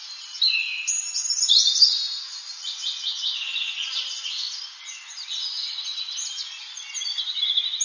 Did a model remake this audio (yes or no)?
no